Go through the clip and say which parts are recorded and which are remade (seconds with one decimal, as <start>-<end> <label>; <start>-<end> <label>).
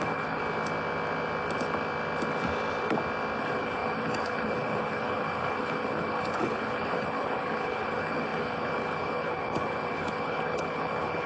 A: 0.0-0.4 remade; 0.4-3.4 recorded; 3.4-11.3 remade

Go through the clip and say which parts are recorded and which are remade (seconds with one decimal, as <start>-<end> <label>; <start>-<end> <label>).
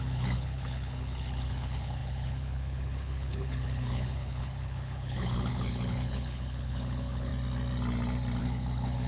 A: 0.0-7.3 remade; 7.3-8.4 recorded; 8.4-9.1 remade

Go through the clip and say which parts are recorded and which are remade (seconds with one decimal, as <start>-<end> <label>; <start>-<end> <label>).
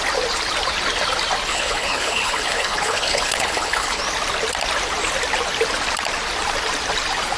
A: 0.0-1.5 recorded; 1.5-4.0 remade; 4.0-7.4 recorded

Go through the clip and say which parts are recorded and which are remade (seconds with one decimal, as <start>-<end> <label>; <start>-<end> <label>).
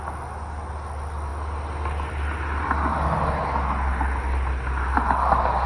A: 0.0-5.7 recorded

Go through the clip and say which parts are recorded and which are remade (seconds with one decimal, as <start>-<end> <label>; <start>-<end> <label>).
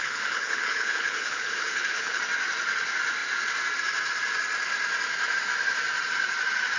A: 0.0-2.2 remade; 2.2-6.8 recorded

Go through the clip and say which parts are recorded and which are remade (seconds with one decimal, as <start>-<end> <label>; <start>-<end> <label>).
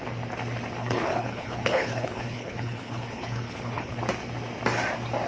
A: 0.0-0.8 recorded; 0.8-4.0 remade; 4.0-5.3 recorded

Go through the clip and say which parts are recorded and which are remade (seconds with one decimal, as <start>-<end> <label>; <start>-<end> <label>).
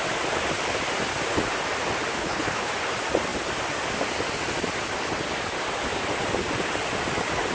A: 0.0-2.1 recorded; 2.1-2.7 remade; 2.7-7.5 recorded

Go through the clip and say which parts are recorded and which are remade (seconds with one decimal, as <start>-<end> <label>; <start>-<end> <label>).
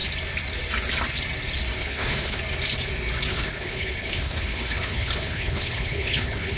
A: 0.0-1.8 recorded; 1.8-2.4 remade; 2.4-3.3 recorded; 3.3-6.6 remade